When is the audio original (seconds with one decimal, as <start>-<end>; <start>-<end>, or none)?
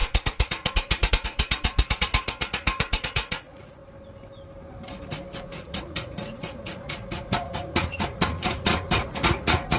3.8-5.4